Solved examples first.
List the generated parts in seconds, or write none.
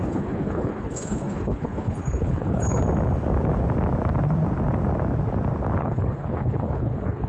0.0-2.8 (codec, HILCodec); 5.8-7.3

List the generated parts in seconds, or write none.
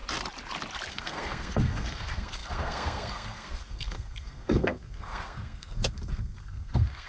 0.9-7.1 (codec, SNAC)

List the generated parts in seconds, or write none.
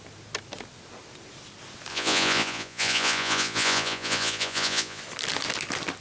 1.9-5.0 (vocoder, Vocos)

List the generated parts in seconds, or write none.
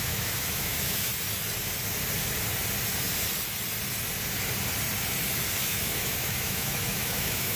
0.0-1.1 (autoencoder, DAC-VAE); 5.6-7.6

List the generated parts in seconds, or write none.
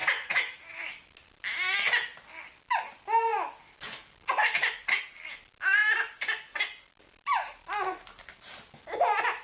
none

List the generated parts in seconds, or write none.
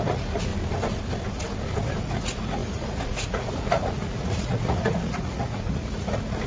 0.0-0.5 (vocoder, Vocos); 2.0-6.5